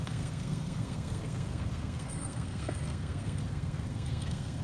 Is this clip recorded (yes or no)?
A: no